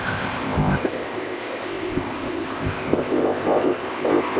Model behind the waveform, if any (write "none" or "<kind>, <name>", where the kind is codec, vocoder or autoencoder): codec, ZipCodec